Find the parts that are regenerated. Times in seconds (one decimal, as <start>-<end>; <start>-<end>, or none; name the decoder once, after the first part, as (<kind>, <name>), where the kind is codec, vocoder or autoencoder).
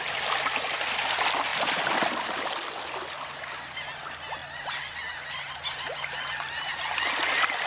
none